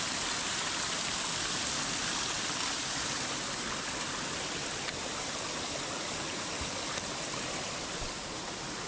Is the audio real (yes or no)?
yes